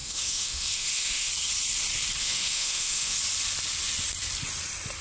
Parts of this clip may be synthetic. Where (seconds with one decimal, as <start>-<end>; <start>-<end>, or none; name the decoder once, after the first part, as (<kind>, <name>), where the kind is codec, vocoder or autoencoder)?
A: 0.0-1.3 (autoencoder, DAC-VAE); 2.2-3.2